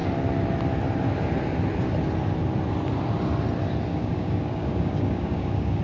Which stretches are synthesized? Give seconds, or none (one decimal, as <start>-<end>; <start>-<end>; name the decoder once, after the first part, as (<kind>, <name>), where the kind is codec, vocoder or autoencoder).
3.9-5.8 (codec, DAC)